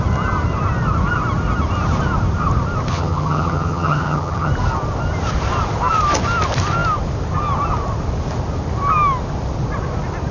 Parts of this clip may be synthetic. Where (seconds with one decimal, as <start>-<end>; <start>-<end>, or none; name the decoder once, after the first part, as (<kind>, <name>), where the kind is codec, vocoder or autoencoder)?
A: 2.9-4.5 (vocoder, HiFi-GAN)